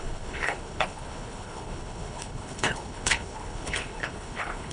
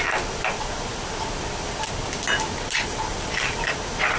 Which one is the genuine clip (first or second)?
second